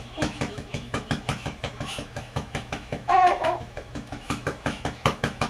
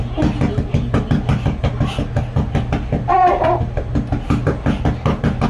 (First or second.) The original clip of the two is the second